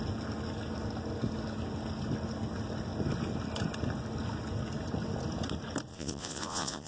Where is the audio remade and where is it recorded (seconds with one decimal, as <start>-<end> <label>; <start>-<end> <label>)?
0.0-5.9 recorded; 5.9-6.9 remade